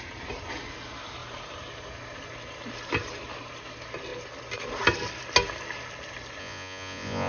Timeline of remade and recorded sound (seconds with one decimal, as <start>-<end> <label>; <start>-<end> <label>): 0.0-6.4 recorded; 6.4-7.3 remade